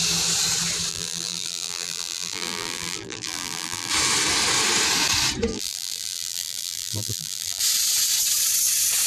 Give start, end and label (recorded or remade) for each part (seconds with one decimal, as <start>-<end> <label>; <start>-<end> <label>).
0.0-0.9 recorded; 0.9-3.9 remade; 3.9-5.5 recorded; 5.5-7.6 remade; 7.6-9.1 recorded